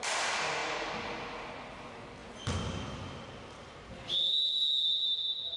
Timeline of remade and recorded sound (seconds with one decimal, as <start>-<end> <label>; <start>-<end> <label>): 0.0-5.6 recorded